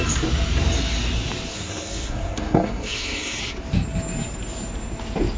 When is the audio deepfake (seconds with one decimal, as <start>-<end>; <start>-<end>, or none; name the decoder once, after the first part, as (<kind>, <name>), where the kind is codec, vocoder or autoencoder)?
1.5-3.4 (codec, SNAC)